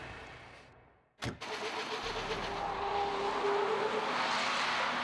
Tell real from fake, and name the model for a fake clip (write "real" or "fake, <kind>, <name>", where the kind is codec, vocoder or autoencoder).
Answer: real